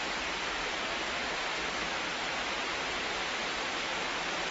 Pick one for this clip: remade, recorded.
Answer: remade